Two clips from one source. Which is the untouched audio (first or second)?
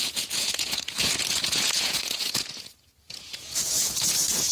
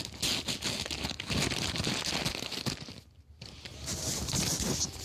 second